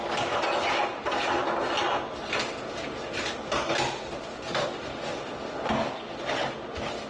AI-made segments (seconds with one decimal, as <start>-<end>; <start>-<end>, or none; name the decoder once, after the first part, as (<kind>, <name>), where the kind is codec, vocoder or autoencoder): none